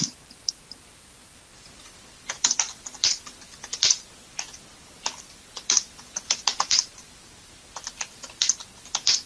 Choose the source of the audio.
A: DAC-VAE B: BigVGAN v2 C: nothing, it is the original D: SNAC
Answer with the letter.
B